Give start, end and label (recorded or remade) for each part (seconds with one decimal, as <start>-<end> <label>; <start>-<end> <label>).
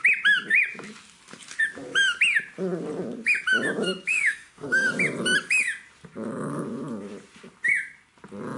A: 0.0-4.1 recorded; 4.1-4.9 remade; 4.9-8.6 recorded